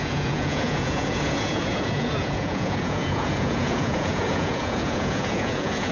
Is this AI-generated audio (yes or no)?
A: yes